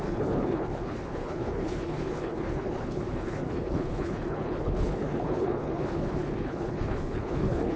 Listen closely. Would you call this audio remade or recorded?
remade